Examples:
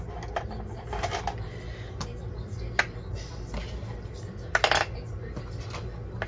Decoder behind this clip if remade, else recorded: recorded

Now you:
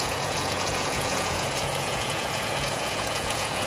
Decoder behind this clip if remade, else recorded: remade, vocoder, Vocos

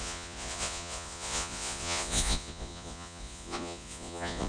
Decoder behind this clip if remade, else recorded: remade, vocoder, Vocos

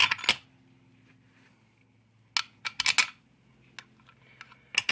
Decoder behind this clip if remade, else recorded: recorded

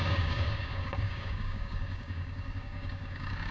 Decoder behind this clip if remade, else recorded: remade, codec, DAC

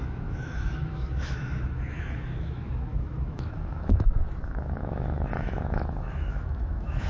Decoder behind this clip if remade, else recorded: remade, autoencoder, DAC-VAE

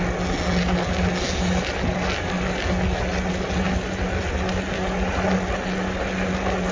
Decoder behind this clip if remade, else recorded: recorded